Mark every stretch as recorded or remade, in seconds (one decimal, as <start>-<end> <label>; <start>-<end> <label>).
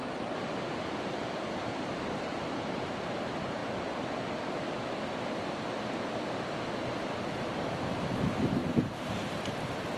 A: 0.0-8.6 recorded; 8.6-9.1 remade; 9.1-10.0 recorded